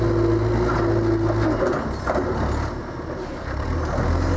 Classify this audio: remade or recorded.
recorded